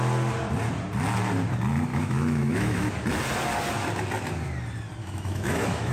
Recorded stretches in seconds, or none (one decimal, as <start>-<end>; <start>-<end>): 0.0-1.9; 2.9-5.0